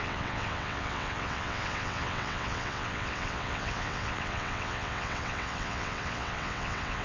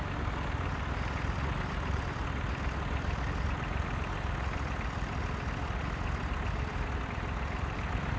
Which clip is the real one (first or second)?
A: second